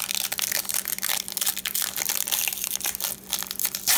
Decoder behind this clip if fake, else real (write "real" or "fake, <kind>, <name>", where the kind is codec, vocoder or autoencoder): real